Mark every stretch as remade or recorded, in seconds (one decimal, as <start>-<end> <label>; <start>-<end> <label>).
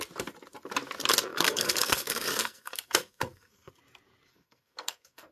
0.0-1.3 recorded; 1.3-3.7 remade; 3.7-4.3 recorded; 4.3-5.3 remade